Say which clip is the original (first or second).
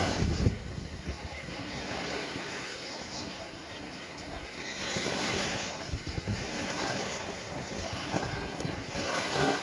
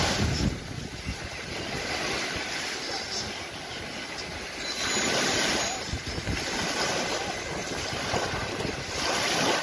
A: second